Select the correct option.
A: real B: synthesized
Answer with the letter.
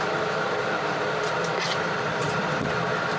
B